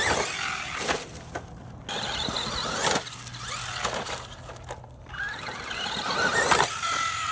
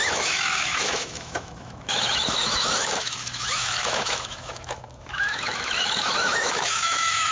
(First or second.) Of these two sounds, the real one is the first